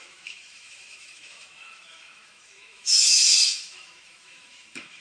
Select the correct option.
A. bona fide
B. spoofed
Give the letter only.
B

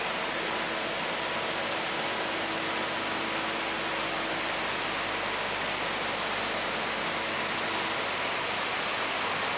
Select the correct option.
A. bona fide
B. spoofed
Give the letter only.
A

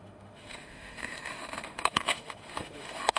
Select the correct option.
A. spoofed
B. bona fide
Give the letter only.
A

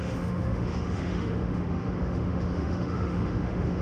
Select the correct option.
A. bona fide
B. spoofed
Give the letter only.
B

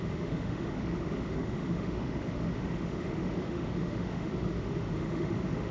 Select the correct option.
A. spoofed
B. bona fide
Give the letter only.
A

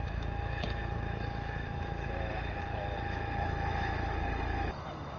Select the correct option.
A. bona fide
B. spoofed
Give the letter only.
B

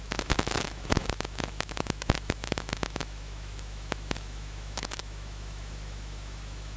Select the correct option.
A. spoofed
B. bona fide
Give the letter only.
A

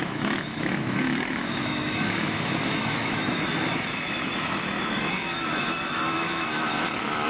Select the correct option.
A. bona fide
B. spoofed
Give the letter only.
B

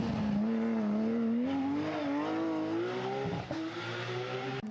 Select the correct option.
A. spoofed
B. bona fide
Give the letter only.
B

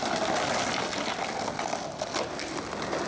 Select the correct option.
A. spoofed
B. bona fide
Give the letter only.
B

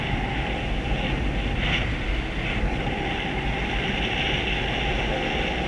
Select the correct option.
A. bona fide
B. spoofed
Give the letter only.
A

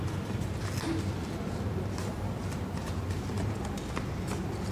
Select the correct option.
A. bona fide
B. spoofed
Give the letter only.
A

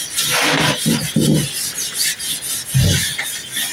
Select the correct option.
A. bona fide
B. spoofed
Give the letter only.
A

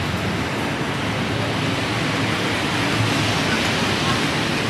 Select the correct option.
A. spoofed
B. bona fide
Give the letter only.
B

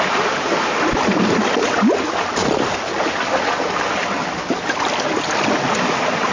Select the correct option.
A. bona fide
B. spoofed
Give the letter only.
A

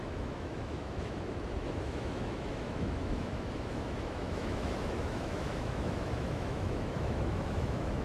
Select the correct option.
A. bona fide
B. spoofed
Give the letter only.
B